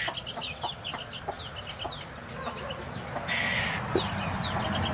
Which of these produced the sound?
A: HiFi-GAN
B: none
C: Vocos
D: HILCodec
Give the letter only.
B